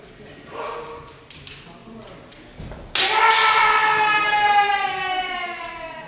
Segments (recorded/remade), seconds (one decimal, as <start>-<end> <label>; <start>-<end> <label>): 0.0-3.4 recorded; 3.4-4.7 remade; 4.7-6.1 recorded